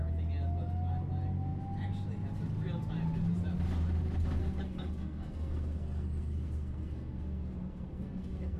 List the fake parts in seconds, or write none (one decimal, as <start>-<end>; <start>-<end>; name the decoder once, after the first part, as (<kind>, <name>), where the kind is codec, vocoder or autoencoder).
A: 4.4-8.6 (codec, SNAC)